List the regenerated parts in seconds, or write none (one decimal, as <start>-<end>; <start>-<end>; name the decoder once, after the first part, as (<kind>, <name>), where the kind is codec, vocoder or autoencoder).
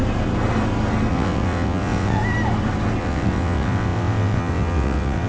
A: 1.1-2.2 (vocoder, WaveNeXt); 3.0-5.3